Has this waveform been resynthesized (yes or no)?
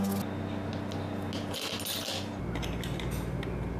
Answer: no